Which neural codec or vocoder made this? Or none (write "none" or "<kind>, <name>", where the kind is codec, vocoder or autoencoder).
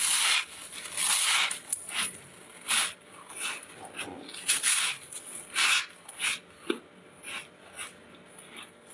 none